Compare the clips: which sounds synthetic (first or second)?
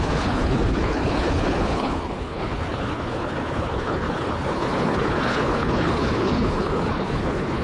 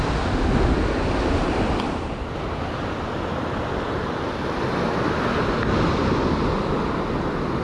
first